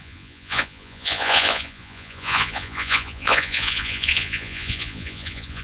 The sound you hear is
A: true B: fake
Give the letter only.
B